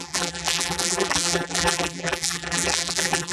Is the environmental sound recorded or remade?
remade